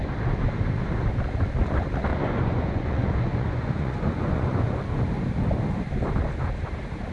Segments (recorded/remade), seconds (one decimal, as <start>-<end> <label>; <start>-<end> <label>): 0.0-2.1 recorded; 2.1-4.8 remade; 4.8-7.1 recorded